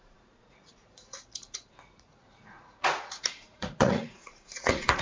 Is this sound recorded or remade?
remade